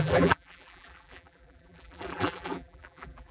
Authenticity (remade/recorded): remade